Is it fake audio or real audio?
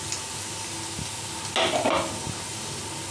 real